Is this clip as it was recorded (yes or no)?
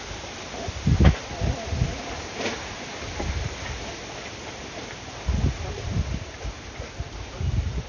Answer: no